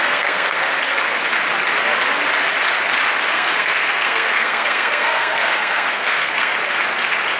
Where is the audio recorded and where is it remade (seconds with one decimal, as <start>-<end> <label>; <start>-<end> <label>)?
0.0-0.6 remade; 0.6-3.3 recorded; 3.3-6.5 remade; 6.5-7.4 recorded